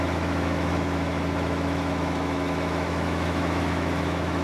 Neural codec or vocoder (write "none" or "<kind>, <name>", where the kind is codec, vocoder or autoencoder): autoencoder, DAC-VAE